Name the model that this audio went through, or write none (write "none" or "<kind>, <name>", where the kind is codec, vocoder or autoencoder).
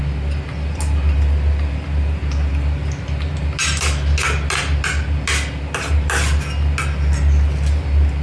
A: none